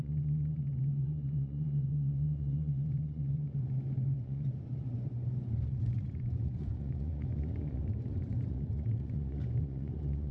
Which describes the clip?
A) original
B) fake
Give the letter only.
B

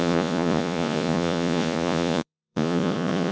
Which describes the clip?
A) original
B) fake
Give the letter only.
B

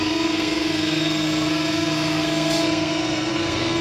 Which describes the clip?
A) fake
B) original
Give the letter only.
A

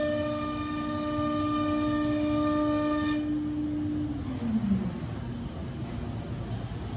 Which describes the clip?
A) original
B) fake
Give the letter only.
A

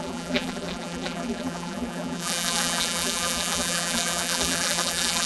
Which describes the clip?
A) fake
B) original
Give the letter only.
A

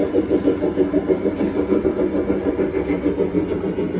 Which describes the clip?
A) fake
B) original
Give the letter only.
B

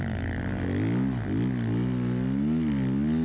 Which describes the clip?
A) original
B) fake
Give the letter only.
A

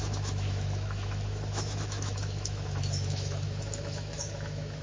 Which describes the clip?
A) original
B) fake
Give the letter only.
B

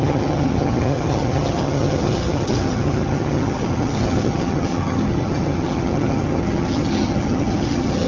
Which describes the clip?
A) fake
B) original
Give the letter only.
A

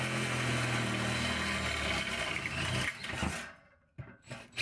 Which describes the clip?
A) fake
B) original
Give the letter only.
B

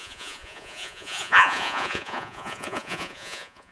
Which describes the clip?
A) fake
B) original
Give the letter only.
A